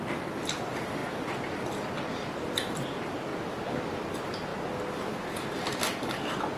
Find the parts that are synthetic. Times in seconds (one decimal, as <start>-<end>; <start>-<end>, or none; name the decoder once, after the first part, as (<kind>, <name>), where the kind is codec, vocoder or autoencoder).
0.0-1.0 (vocoder, BigVGAN v2); 2.1-3.3; 3.8-4.5; 5.1-6.6